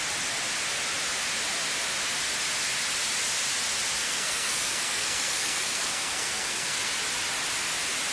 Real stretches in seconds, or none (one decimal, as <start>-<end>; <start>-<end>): 0.0-4.0; 6.9-8.1